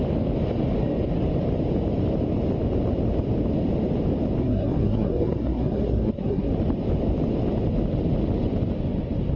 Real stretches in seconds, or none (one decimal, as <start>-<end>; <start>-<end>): 0.0-4.4; 6.5-9.4